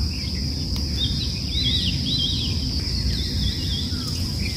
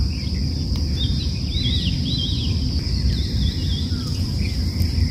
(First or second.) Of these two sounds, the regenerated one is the second